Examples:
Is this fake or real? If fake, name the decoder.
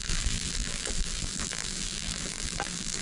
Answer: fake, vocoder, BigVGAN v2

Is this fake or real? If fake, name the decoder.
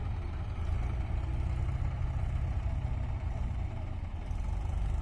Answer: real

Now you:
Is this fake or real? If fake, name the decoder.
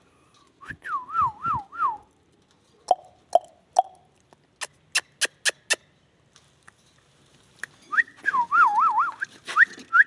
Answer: real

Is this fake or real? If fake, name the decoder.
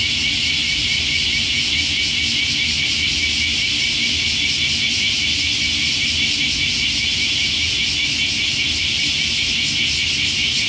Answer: real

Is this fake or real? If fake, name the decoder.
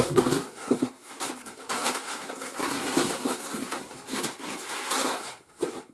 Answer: fake, codec, SNAC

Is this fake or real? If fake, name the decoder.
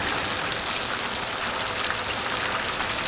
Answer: real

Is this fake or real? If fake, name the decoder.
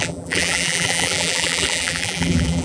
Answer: fake, vocoder, BigVGAN v2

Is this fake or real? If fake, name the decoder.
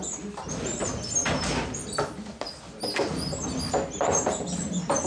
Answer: real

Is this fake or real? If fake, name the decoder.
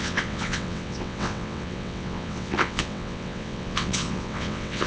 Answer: fake, vocoder, WaveNeXt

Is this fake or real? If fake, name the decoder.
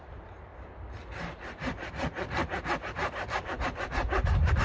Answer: real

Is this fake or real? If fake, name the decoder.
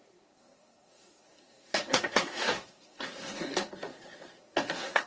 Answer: fake, codec, SNAC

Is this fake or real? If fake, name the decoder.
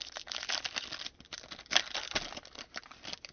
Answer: real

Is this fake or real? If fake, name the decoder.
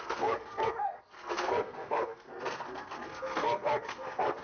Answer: fake, codec, SNAC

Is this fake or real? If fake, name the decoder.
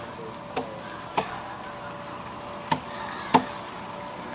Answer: real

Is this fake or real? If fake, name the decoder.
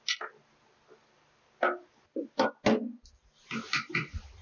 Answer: real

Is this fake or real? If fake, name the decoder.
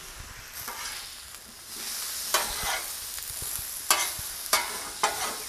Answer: real